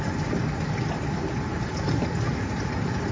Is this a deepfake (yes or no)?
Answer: no